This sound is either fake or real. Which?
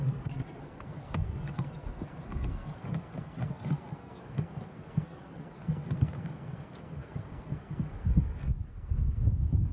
fake